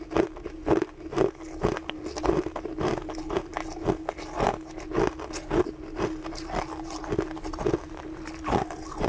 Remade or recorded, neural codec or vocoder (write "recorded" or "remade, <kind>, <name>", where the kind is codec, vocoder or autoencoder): recorded